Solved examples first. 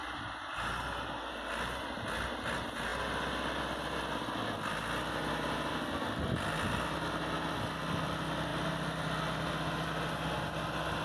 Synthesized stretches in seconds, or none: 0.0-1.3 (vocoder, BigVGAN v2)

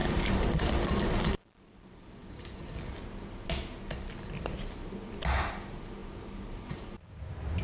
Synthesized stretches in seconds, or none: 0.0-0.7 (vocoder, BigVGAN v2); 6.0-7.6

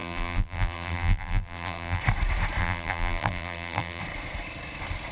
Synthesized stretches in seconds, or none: 0.0-2.0 (vocoder, BigVGAN v2); 2.6-4.0

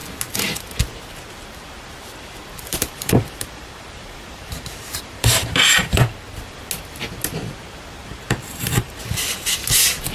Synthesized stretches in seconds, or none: 2.7-6.2 (vocoder, BigVGAN v2); 8.0-9.0

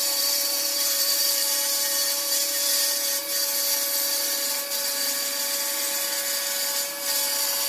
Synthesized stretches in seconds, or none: 0.0-3.2 (vocoder, BigVGAN v2)

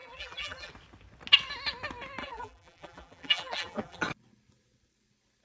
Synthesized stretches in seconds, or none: 0.0-0.7 (vocoder, BigVGAN v2); 2.2-4.0